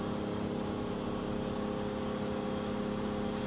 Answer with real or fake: real